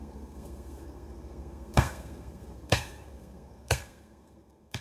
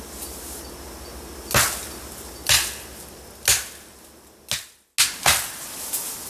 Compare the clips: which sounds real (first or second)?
second